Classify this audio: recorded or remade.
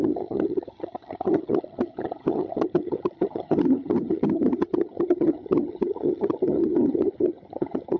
remade